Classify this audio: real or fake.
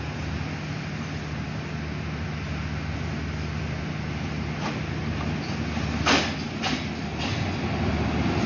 real